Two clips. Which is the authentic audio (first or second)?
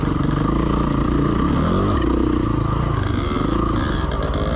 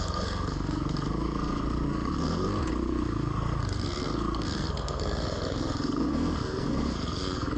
first